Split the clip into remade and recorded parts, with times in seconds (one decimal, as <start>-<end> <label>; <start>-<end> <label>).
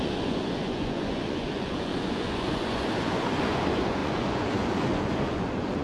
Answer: 0.0-5.8 remade